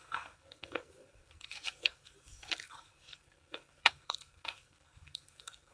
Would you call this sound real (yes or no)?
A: no